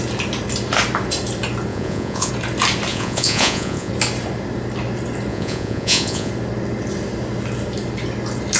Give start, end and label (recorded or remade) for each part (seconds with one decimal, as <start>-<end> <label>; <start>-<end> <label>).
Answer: 0.0-1.7 recorded; 1.7-2.3 remade; 2.3-2.9 recorded; 2.9-3.9 remade; 3.9-5.3 recorded; 5.3-6.3 remade; 6.3-8.6 recorded